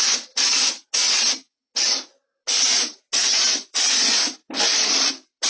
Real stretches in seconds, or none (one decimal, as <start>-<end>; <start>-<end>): 0.0-5.5